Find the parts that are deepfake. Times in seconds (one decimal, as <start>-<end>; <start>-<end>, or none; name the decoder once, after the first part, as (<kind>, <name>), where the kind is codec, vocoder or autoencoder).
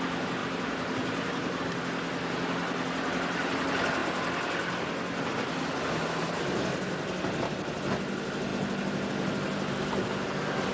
0.4-1.6 (vocoder, BigVGAN v2)